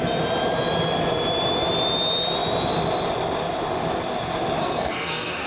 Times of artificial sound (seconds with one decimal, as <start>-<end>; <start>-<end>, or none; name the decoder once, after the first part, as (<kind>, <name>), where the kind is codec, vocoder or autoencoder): 4.6-5.5 (codec, SNAC)